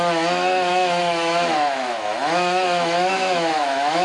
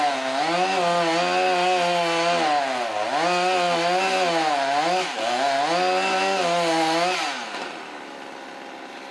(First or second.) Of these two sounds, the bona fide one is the second